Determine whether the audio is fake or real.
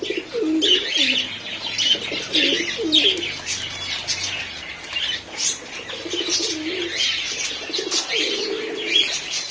real